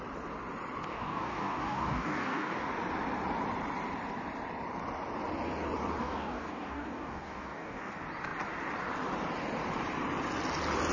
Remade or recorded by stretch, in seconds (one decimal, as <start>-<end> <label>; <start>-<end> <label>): 0.0-0.9 recorded; 0.9-2.7 remade; 2.7-6.0 recorded; 6.0-7.9 remade; 7.9-10.9 recorded